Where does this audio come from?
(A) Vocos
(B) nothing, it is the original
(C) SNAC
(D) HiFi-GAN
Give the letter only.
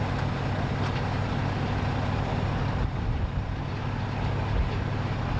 B